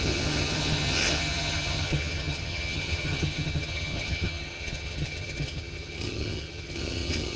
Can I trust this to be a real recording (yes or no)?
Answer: no